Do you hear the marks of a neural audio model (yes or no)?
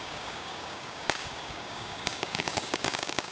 yes